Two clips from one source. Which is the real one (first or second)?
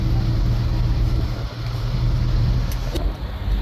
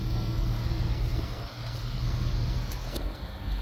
first